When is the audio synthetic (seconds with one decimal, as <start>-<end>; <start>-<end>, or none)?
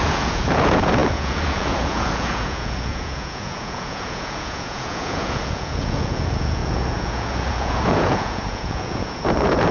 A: 0.0-9.7